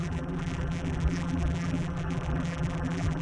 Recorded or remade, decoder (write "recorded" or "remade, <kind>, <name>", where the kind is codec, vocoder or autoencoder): remade, vocoder, BigVGAN v2